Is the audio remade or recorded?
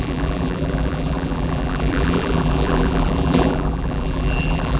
remade